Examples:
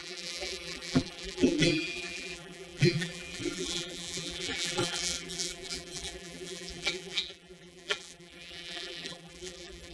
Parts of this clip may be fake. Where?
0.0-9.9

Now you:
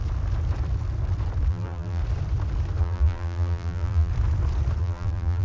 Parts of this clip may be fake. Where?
1.5-2.0; 2.8-4.1; 4.8-5.4

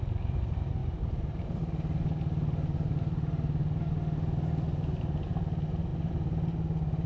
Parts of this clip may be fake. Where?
0.8-1.6

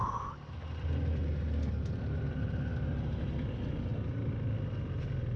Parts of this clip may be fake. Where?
0.0-1.2; 2.3-5.4

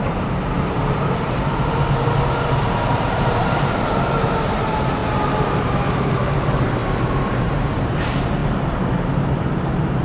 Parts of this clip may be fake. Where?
0.0-10.0

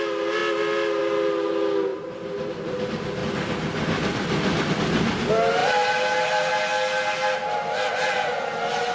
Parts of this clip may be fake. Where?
1.9-2.8; 5.6-6.7

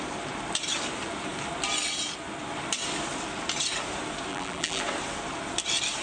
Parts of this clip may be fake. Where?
4.3-4.8

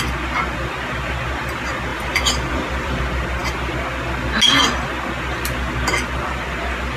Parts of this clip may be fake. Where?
1.9-3.0